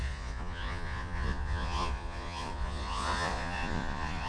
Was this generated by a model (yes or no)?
yes